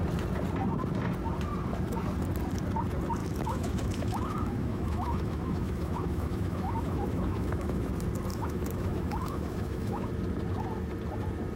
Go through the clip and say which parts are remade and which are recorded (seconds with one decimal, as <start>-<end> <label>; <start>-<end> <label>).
0.0-3.2 recorded; 3.2-7.9 remade; 7.9-8.3 recorded; 8.3-10.1 remade; 10.1-11.6 recorded